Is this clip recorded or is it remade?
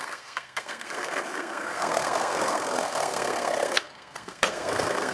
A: remade